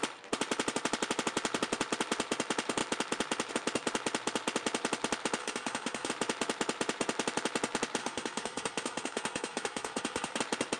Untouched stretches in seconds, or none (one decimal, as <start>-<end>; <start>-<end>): 0.0-5.4; 6.1-8.0; 10.4-10.8